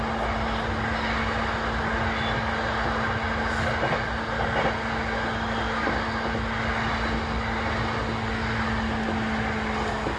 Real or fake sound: real